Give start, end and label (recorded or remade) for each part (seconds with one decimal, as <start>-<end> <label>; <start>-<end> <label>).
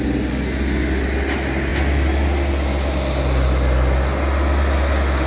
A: 0.0-5.3 recorded